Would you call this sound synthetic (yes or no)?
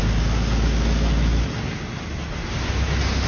no